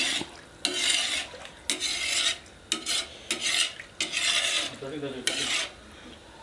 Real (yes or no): yes